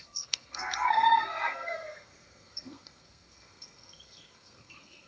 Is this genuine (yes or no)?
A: no